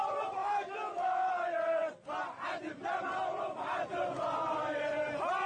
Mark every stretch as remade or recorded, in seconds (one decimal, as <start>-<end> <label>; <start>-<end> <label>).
0.0-0.4 recorded; 0.4-1.3 remade; 1.3-5.5 recorded